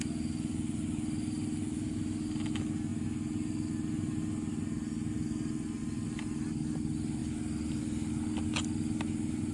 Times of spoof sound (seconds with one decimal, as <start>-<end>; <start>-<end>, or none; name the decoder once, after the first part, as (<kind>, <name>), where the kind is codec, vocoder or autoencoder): none